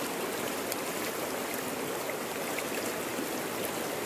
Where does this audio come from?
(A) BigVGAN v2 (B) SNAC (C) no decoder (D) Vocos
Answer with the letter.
C